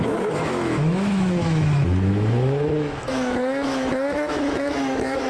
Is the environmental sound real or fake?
fake